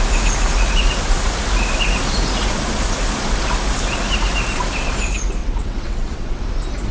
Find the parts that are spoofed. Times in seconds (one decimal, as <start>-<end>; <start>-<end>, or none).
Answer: 5.4-6.4